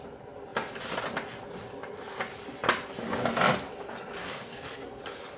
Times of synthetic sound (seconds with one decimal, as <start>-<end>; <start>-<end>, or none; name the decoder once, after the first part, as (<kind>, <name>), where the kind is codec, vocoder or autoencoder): 4.2-5.0 (codec, SNAC)